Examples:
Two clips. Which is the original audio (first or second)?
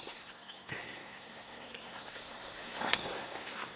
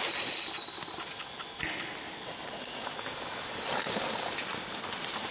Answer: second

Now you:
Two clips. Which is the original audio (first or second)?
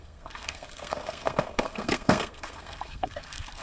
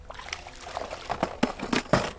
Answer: second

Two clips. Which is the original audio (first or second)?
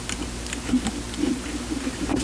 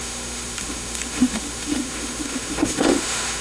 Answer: first